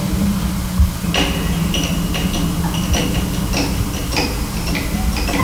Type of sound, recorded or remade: recorded